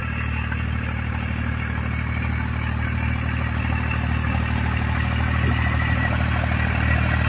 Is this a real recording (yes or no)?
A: yes